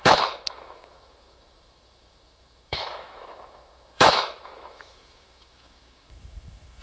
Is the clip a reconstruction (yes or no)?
yes